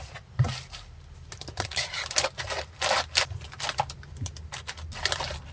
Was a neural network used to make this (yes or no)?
no